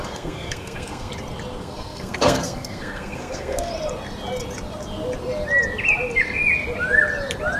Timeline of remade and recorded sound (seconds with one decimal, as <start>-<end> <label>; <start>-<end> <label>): 0.0-1.1 remade; 1.1-1.6 recorded; 1.6-3.7 remade; 3.7-7.6 recorded